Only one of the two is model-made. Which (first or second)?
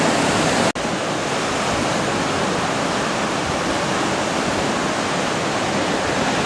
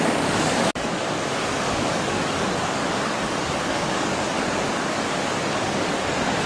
second